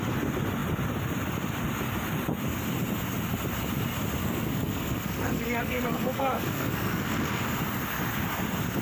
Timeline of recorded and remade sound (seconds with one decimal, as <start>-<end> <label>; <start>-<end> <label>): 0.0-4.2 recorded; 4.2-7.4 remade; 7.4-8.8 recorded